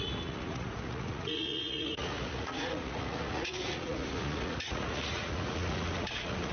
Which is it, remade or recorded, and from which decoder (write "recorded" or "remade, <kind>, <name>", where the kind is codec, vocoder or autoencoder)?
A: remade, vocoder, Vocos